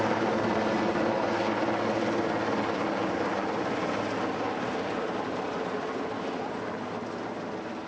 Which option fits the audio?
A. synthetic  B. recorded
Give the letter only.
B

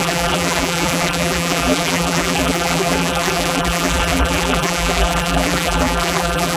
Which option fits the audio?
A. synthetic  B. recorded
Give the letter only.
A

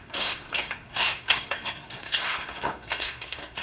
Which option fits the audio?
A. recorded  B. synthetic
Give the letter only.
B